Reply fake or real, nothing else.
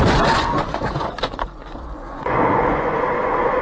fake